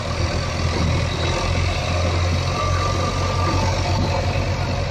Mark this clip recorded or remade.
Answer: recorded